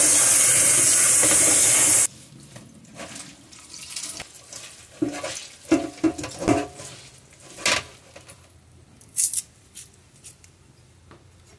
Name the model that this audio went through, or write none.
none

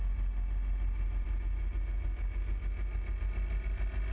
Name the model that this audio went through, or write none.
none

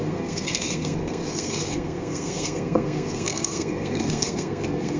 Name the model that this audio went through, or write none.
codec, SNAC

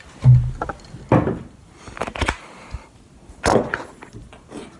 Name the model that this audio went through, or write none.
none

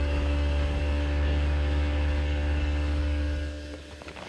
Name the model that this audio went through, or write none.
codec, DAC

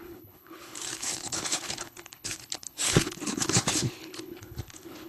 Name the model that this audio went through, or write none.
codec, HILCodec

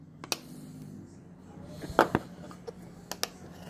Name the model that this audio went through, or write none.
none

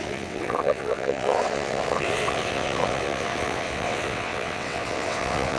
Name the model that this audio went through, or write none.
vocoder, WaveNeXt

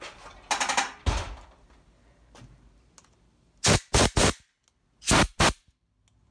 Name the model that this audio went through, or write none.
none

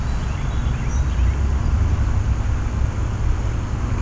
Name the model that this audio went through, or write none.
none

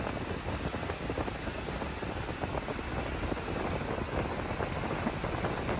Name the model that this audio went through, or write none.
none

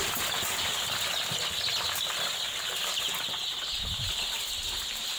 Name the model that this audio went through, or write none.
none